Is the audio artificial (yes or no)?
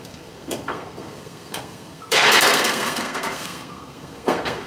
yes